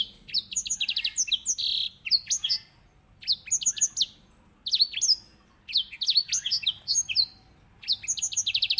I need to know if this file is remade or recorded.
recorded